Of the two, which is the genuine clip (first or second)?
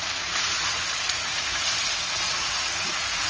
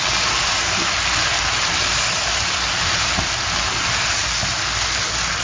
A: second